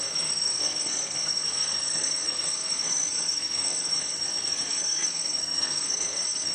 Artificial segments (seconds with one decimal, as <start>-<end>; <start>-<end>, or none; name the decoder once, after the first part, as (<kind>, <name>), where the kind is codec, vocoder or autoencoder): 0.0-6.5 (codec, SNAC)